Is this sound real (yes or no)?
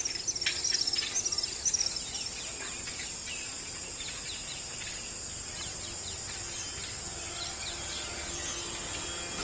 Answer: yes